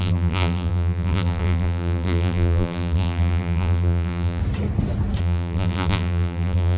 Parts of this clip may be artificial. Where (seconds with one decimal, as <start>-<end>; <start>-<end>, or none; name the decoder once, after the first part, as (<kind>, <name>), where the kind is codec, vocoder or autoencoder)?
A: 0.0-4.4 (vocoder, BigVGAN v2); 5.2-6.8